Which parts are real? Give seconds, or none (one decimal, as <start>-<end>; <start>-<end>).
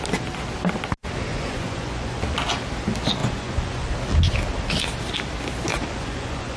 0.0-1.3; 2.2-3.2; 3.9-5.7